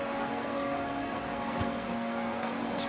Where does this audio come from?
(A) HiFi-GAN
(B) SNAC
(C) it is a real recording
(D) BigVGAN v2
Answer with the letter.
B